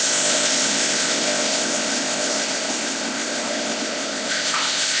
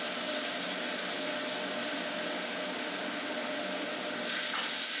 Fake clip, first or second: first